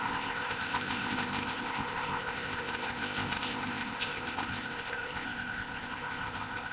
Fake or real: fake